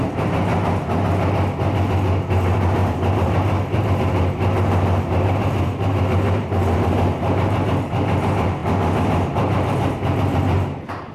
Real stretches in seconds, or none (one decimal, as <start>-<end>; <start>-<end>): 0.5-2.3